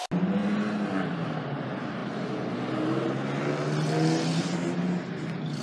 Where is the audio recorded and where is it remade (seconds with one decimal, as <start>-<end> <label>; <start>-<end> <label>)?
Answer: 0.0-5.6 recorded